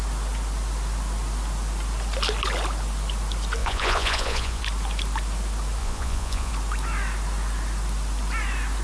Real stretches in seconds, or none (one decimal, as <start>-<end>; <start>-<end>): 0.0-3.6; 4.6-5.8; 6.5-8.8